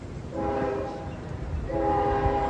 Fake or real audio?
fake